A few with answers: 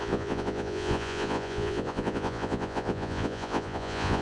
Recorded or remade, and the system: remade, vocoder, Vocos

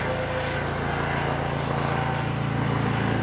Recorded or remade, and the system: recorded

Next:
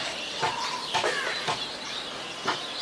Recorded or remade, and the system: recorded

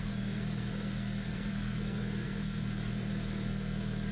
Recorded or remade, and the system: remade, codec, SNAC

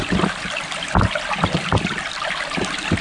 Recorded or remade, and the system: remade, vocoder, BigVGAN v2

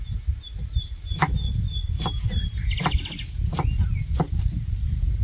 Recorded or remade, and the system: recorded